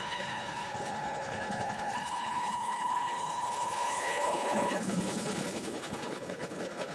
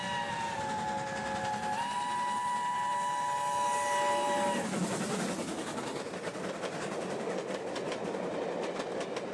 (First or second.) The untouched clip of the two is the second